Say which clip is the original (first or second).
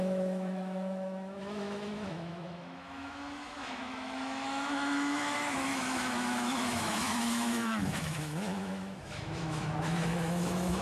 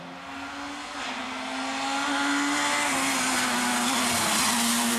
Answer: second